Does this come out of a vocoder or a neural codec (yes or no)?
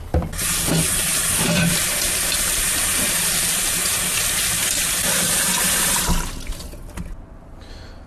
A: no